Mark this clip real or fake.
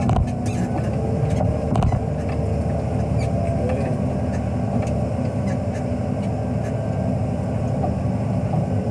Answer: real